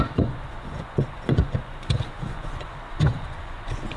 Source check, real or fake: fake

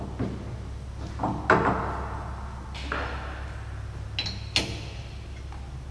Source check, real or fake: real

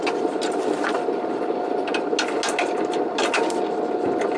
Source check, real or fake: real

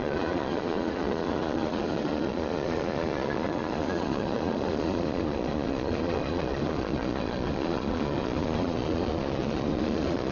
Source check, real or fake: fake